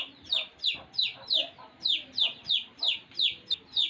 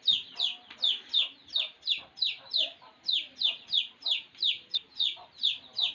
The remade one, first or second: second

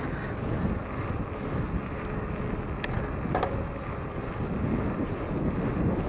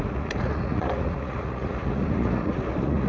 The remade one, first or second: second